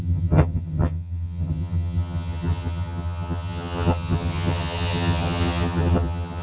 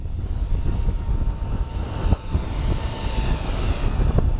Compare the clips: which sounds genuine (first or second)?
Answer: second